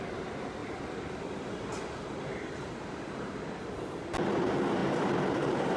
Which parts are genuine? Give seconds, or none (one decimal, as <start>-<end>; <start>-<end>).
0.0-0.6; 1.2-2.3; 3.0-5.8